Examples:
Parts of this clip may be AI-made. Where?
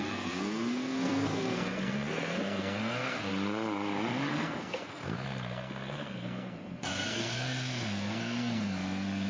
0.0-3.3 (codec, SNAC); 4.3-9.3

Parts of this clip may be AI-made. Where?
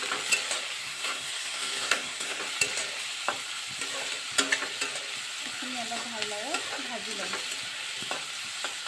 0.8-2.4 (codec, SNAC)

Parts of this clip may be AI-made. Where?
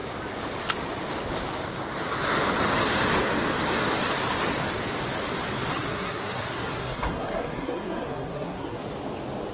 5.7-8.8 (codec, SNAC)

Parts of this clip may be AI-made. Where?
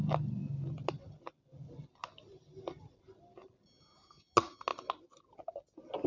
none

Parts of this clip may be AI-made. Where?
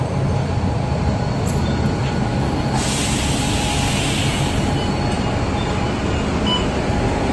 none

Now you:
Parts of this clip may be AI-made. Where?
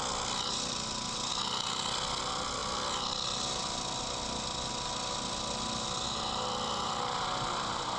none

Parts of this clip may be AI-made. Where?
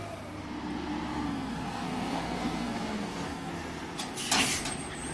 1.1-3.5 (codec, SNAC)